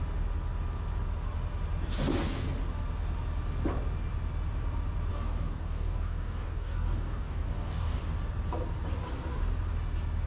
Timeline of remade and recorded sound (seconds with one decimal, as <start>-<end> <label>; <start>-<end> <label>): 0.0-5.1 recorded; 5.1-8.0 remade; 8.0-10.3 recorded